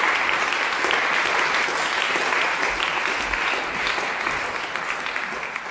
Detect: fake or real real